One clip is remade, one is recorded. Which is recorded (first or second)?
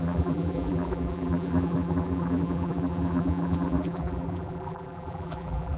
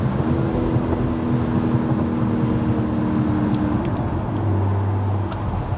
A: second